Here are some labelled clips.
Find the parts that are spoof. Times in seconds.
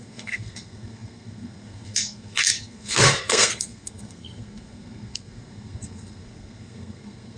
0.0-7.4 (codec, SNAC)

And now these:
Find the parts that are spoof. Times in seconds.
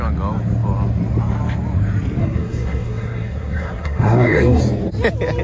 2.2-4.6 (codec, SNAC)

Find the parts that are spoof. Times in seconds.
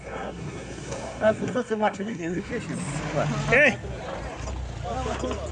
0.0-2.5 (codec, SNAC)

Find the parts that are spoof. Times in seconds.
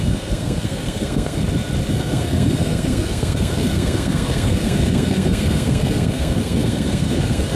0.0-1.4 (codec, SNAC); 1.9-7.5